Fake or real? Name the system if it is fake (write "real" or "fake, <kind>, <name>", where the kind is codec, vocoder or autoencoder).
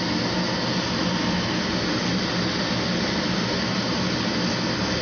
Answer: real